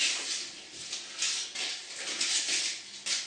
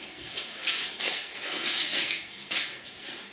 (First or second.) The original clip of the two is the first